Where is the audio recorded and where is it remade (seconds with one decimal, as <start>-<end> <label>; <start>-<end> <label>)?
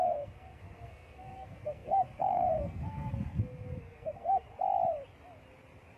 0.0-4.5 remade; 4.5-6.0 recorded